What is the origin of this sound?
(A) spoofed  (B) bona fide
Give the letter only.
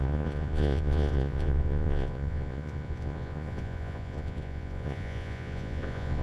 A